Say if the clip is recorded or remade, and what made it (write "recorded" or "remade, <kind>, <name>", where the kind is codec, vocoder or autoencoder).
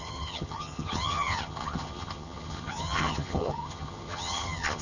remade, vocoder, HiFi-GAN